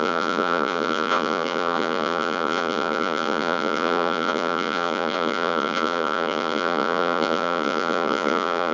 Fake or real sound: fake